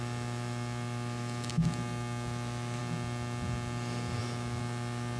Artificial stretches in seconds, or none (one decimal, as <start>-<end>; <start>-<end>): 0.0-2.8; 4.2-5.2